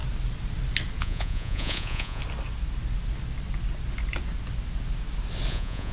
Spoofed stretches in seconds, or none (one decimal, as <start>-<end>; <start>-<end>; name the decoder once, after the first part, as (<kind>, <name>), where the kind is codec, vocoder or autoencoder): 1.0-2.2 (vocoder, Vocos); 5.5-5.9